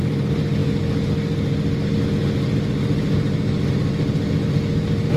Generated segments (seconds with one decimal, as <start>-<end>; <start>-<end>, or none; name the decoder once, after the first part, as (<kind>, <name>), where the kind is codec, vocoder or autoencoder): none